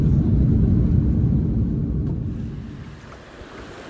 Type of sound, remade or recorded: recorded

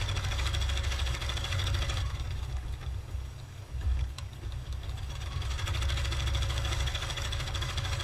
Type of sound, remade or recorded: remade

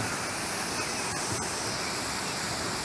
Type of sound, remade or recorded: recorded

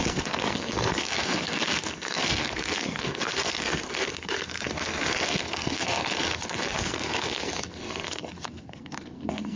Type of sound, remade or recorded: remade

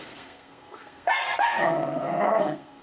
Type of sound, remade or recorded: remade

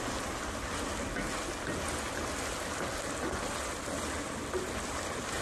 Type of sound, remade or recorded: recorded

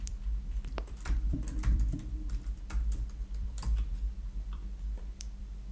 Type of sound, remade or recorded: remade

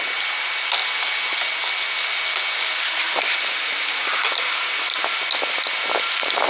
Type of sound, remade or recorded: recorded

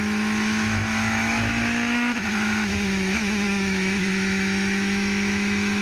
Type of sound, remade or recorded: remade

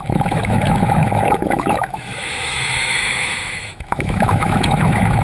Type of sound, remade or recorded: remade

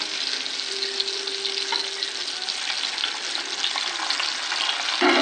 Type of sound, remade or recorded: recorded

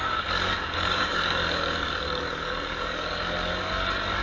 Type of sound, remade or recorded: remade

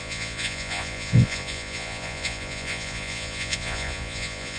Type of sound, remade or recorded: remade